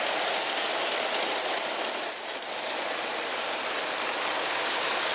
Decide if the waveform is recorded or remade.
recorded